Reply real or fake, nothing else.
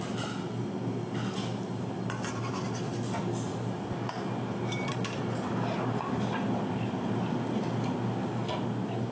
real